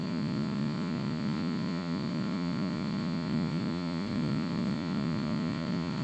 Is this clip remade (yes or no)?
yes